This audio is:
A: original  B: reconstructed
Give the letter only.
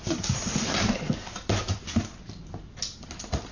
A